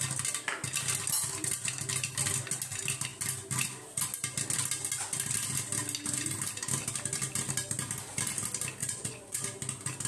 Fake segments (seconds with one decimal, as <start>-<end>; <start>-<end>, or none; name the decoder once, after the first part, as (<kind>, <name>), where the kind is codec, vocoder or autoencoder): 8.8-9.4 (vocoder, Vocos)